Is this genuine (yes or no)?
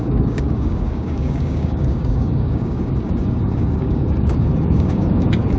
no